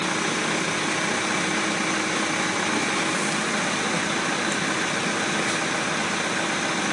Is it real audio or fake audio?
real